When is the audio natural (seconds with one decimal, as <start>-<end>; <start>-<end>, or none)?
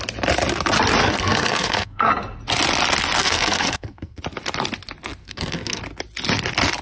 0.0-1.0; 2.1-3.2; 4.2-5.2; 5.8-6.8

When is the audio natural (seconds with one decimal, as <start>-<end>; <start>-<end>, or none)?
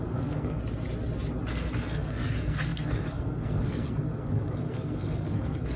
0.6-1.5